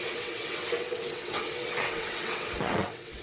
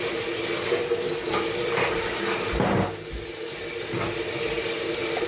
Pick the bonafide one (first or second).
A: second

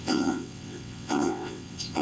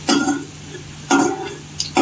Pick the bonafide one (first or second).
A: second